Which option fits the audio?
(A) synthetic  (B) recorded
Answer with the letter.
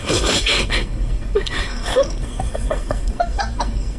A